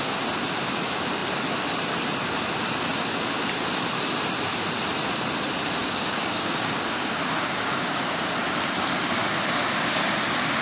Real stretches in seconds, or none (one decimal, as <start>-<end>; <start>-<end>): 0.0-5.8; 8.2-10.6